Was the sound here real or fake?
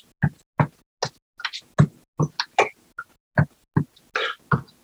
real